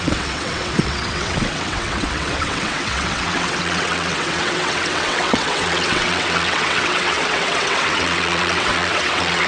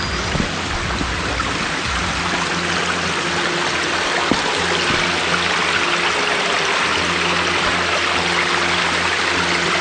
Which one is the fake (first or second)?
first